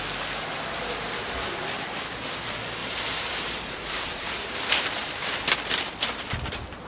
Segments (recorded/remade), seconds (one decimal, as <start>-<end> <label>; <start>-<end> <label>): 0.0-2.8 recorded; 2.8-4.3 remade; 4.3-6.9 recorded